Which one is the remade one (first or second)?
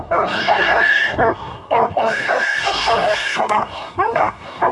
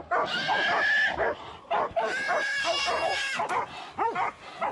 first